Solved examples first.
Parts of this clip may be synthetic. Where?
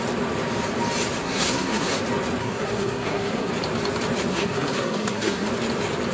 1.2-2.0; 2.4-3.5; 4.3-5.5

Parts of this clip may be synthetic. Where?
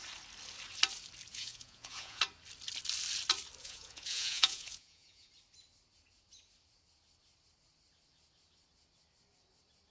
1.3-2.2; 3.6-5.3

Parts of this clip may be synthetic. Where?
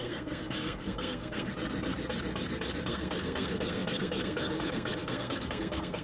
0.0-1.5; 2.8-6.0